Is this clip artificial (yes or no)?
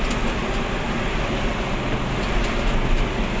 no